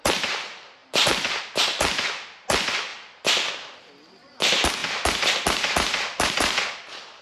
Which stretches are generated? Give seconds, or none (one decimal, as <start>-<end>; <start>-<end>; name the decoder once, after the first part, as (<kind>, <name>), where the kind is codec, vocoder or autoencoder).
none